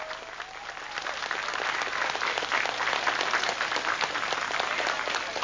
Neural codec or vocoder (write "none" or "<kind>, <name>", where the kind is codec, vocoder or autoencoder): none